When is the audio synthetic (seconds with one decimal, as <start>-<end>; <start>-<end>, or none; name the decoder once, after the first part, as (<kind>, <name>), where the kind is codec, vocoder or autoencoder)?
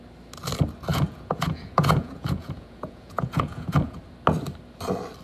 0.9-4.0 (vocoder, Vocos)